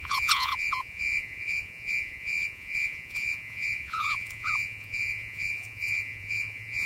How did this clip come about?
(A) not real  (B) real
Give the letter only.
A